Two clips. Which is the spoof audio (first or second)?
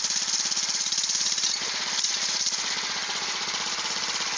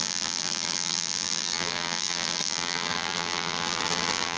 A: second